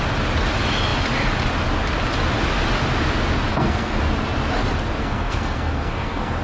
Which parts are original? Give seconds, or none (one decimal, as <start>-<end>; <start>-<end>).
0.0-3.5; 4.0-5.0